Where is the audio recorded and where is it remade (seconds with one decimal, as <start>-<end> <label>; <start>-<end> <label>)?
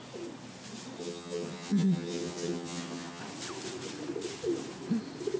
0.0-1.0 recorded; 1.0-3.2 remade; 3.2-5.4 recorded